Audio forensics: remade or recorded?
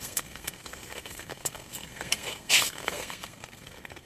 remade